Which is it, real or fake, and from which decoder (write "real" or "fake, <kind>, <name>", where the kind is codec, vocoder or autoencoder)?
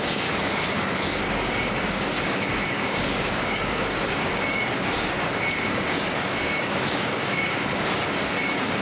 fake, codec, DAC